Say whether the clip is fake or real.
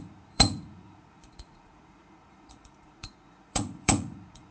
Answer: fake